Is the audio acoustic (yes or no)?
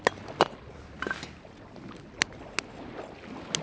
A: yes